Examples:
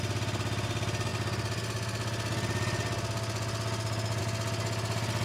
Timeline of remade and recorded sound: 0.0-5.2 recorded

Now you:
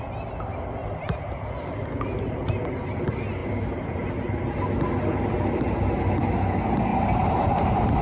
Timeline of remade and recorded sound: 0.0-0.8 recorded; 0.8-1.3 remade; 1.3-3.4 recorded; 3.4-4.1 remade; 4.1-6.9 recorded; 6.9-8.0 remade

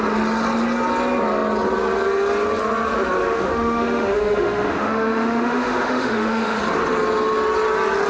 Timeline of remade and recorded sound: 0.0-3.2 recorded; 3.2-6.6 remade; 6.6-8.1 recorded

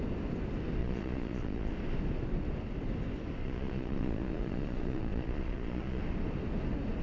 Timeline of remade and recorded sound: 0.0-0.8 recorded; 0.8-1.7 remade; 1.7-3.4 recorded; 3.4-6.0 remade; 6.0-7.0 recorded

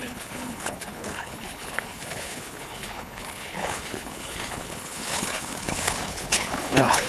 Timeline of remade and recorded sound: 0.0-7.1 remade

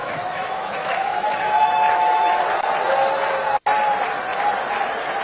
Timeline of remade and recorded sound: 0.0-2.5 remade; 2.5-5.2 recorded